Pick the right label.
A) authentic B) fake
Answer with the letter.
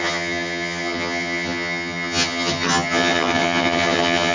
B